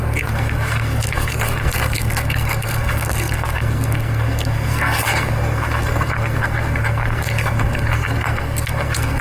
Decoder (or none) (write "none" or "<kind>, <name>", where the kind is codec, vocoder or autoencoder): codec, SNAC